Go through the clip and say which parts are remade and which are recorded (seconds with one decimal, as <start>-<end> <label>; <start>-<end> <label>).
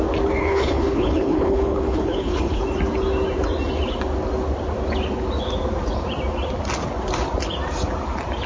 0.0-0.4 recorded; 0.4-2.6 remade; 2.6-8.5 recorded